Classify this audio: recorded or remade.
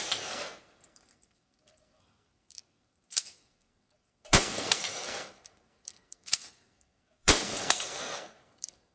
remade